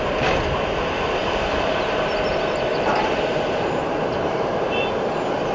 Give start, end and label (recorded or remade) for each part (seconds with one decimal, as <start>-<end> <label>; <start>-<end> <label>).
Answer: 0.0-1.2 recorded; 1.2-1.8 remade; 1.8-2.7 recorded; 2.7-4.9 remade; 4.9-5.5 recorded

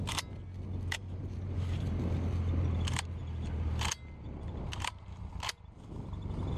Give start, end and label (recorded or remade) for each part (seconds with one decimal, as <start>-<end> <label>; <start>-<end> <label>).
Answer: 0.0-1.0 recorded; 1.0-2.0 remade; 2.0-6.6 recorded

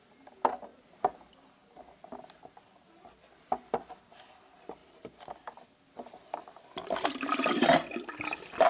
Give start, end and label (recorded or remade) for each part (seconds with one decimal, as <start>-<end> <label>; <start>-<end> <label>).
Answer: 0.0-0.7 recorded; 0.7-1.3 remade; 1.3-8.7 recorded

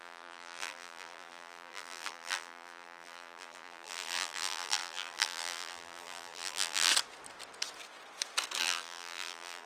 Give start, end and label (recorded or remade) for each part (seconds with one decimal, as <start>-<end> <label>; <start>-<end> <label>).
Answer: 0.0-6.9 remade; 6.9-8.6 recorded; 8.6-9.7 remade